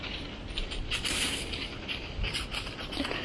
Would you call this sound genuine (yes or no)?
yes